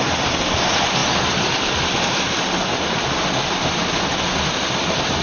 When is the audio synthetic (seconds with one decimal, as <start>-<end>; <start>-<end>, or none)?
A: none